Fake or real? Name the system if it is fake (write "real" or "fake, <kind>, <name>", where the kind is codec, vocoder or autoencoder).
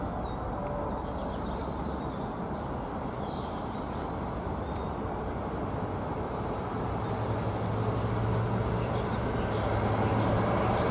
real